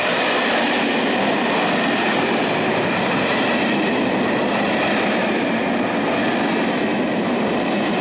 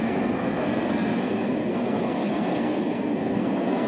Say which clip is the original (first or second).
first